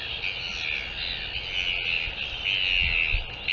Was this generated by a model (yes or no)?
no